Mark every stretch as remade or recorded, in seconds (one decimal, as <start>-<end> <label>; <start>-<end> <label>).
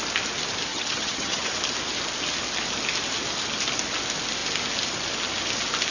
0.0-0.7 recorded; 0.7-1.5 remade; 1.5-5.9 recorded